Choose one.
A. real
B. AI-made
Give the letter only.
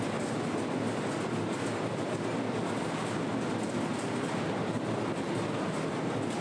A